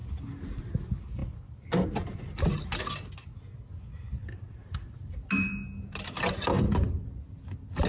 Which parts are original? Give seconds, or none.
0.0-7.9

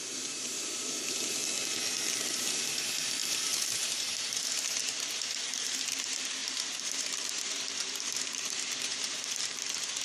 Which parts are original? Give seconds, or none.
1.4-2.2

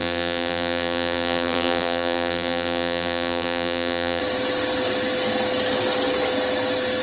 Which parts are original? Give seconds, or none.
4.2-7.0

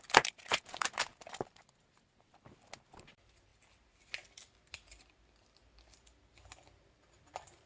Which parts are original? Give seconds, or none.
1.1-2.9; 3.5-6.8